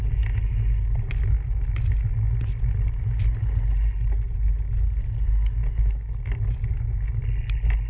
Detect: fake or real real